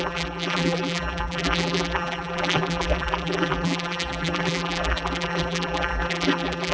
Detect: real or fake fake